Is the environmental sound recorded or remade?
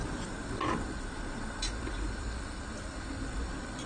recorded